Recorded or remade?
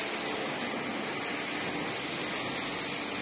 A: recorded